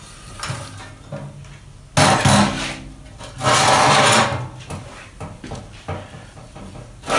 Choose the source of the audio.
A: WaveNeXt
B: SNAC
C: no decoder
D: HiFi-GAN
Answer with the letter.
C